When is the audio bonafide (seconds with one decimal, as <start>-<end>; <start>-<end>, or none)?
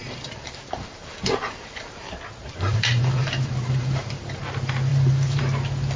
1.9-2.4; 4.4-4.9; 5.4-6.0